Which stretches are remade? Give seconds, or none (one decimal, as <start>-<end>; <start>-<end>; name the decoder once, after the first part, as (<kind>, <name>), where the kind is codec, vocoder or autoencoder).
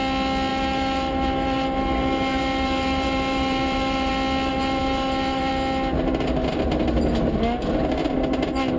0.5-4.1 (vocoder, BigVGAN v2); 4.5-5.5